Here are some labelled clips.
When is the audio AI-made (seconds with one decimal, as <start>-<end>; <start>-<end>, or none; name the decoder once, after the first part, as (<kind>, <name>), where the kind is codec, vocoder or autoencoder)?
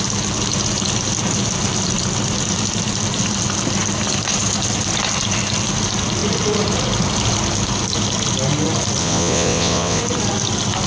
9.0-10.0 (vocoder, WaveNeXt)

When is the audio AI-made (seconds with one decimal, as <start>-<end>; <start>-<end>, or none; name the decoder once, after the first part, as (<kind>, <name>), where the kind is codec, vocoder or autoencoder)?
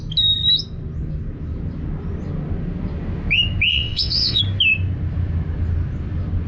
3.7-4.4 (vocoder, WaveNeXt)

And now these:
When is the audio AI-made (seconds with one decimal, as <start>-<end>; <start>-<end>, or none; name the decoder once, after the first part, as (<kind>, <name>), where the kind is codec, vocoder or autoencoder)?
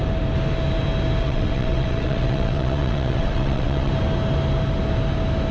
1.2-3.9 (vocoder, WaveNeXt)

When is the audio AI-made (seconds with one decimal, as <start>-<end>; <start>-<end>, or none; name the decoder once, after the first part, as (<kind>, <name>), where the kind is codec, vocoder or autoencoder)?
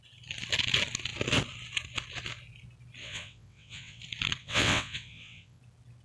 3.0-4.0 (vocoder, WaveNeXt); 4.4-5.6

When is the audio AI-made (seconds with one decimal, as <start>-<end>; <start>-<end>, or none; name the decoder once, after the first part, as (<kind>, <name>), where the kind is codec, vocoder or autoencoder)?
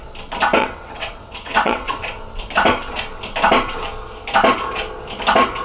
0.6-2.0 (vocoder, WaveNeXt)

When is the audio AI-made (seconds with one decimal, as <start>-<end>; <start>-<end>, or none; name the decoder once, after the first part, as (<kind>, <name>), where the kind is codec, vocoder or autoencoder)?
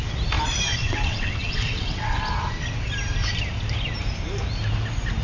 0.8-2.2 (vocoder, WaveNeXt)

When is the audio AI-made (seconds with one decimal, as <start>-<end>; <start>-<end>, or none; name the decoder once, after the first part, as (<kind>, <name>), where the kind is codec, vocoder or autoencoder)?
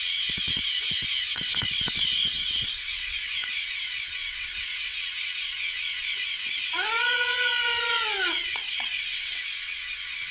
0.0-10.3 (vocoder, WaveNeXt)